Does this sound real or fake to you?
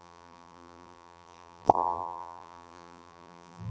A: fake